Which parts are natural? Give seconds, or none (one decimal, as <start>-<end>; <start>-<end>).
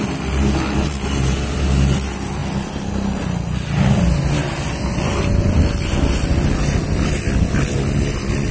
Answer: 0.0-8.5